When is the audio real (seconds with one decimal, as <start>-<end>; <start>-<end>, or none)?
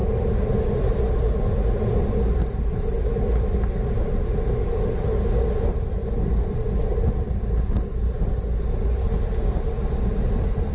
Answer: 2.4-6.0; 8.1-10.7